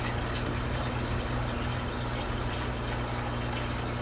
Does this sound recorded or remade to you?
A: recorded